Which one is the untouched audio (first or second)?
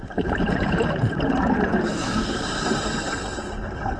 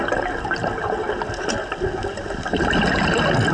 second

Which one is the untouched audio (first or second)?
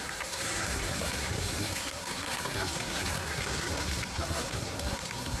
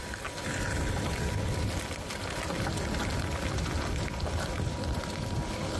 second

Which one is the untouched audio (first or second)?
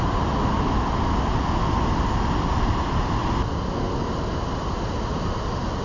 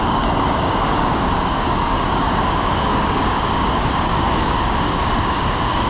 first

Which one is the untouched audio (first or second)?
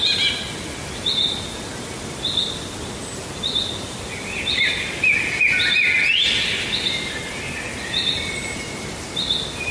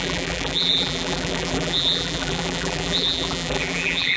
first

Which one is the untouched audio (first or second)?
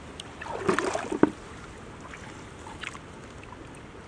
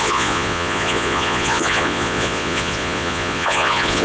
first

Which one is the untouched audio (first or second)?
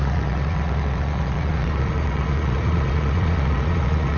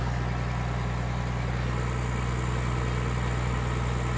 second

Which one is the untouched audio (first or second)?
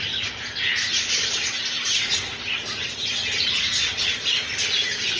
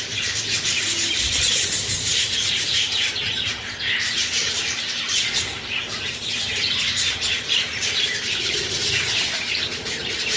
first